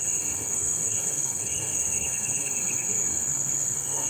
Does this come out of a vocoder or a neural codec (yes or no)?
yes